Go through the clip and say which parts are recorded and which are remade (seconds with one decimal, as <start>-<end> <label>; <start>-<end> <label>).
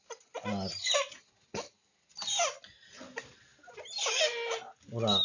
0.0-5.2 recorded